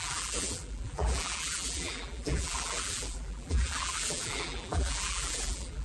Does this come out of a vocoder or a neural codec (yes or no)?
yes